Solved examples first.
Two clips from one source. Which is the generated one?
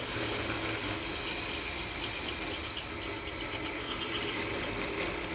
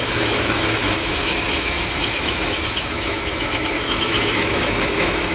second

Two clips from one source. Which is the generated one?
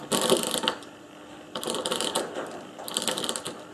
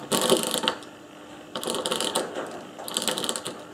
first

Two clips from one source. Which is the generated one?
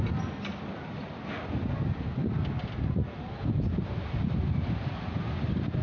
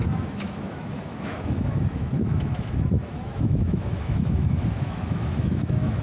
second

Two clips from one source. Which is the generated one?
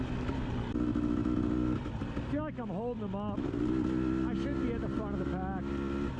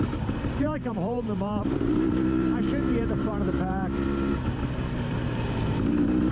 second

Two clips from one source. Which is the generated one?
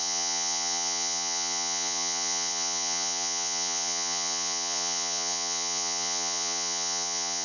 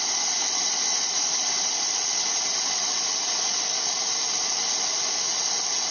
first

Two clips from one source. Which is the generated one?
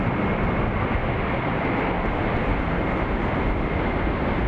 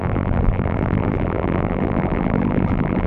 second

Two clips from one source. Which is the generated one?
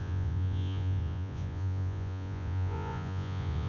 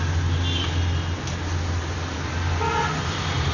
first